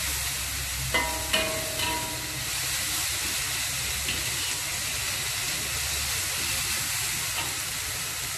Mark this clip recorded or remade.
recorded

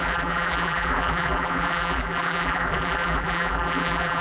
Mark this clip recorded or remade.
remade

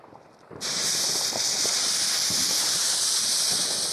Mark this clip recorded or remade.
remade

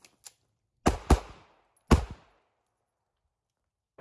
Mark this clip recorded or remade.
recorded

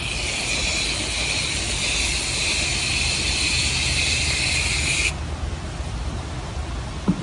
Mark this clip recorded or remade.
recorded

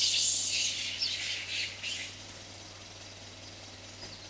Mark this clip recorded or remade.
recorded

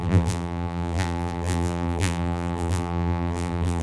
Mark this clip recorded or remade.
remade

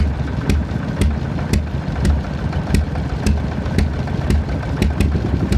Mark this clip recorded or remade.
recorded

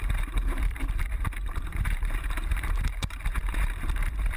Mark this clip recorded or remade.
remade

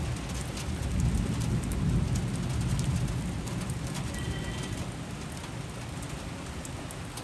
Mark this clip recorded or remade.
recorded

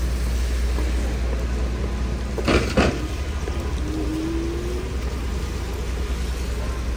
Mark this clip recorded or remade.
recorded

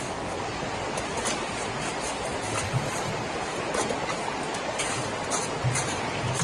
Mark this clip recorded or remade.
recorded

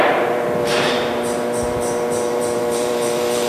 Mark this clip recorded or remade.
remade